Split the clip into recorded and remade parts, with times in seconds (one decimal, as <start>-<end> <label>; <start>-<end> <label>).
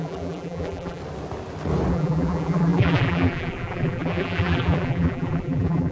0.0-1.0 remade; 1.0-1.9 recorded; 1.9-5.9 remade